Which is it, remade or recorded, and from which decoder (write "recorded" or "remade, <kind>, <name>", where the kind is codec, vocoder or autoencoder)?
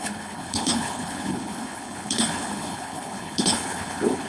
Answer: remade, codec, HILCodec